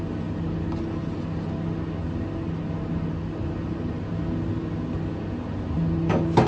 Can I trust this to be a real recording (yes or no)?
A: yes